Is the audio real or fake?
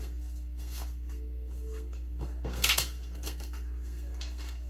fake